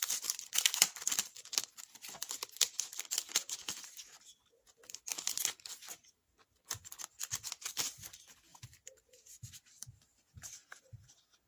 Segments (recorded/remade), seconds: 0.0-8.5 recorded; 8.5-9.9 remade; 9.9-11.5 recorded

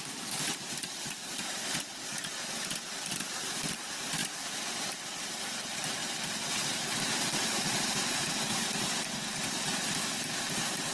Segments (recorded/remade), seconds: 0.0-1.9 remade; 1.9-3.2 recorded; 3.2-4.2 remade; 4.2-5.1 recorded; 5.1-10.9 remade

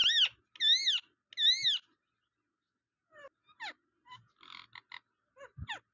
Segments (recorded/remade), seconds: 0.0-5.9 recorded

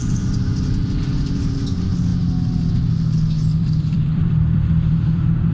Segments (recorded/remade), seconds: 0.0-3.5 recorded; 3.5-5.5 remade

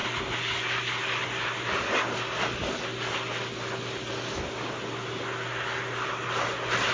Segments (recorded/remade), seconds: 0.0-6.9 recorded

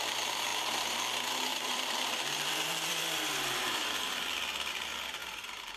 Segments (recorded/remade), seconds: 0.0-0.5 recorded; 0.5-1.1 remade; 1.1-1.5 recorded; 1.5-4.4 remade; 4.4-5.2 recorded; 5.2-5.8 remade